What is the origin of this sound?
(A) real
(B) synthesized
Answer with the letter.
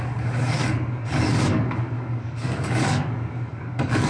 B